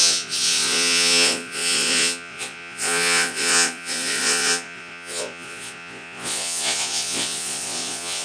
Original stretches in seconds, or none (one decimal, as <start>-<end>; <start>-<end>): none